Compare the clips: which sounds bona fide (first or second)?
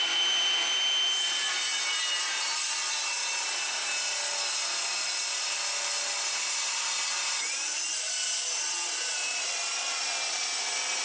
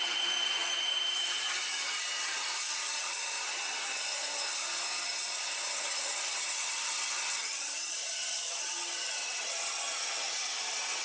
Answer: first